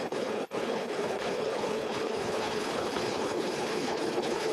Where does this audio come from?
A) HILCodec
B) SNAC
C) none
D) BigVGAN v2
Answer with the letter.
A